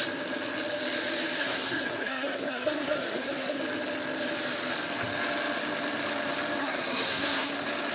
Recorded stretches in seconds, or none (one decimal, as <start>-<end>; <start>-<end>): 0.0-1.4; 3.6-6.6; 7.5-7.9